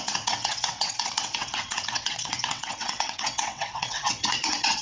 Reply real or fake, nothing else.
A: fake